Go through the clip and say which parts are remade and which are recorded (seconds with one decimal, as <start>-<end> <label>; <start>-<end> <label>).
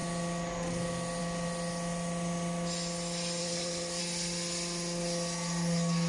0.0-3.4 recorded; 3.4-4.0 remade; 4.0-6.1 recorded